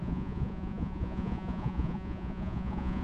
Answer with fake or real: fake